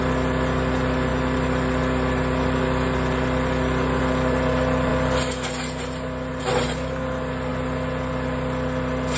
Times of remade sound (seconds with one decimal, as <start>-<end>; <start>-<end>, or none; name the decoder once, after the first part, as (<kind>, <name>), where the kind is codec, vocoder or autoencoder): none